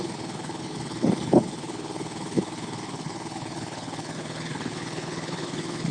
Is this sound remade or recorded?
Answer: remade